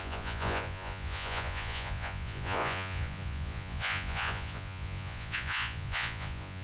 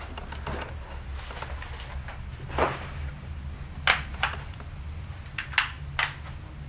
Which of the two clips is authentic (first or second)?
second